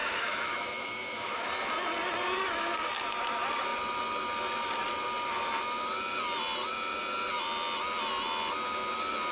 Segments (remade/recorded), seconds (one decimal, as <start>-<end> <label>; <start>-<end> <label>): 0.0-1.5 remade; 1.5-9.3 recorded